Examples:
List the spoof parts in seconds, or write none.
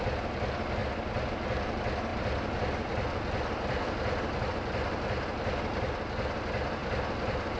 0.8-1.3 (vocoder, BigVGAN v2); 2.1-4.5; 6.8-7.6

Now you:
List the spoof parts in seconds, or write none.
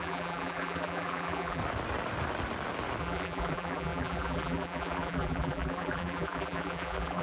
0.0-1.6 (vocoder, BigVGAN v2); 3.0-7.2